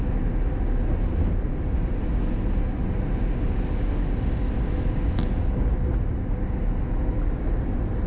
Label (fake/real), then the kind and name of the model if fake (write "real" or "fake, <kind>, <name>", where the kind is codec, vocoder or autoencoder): real